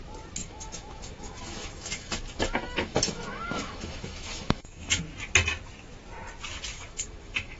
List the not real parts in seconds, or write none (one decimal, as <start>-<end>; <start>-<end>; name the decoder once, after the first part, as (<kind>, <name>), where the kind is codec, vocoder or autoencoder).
0.4-5.0 (autoencoder, DAC-VAE); 6.7-7.6